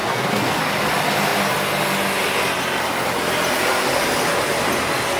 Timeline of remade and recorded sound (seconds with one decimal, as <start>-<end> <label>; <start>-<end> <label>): 0.0-0.6 remade; 0.6-5.2 recorded